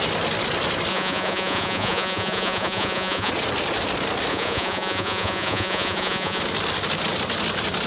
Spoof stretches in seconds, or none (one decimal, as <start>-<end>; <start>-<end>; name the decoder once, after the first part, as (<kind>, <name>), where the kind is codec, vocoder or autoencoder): 0.9-3.3 (vocoder, Vocos); 4.3-6.4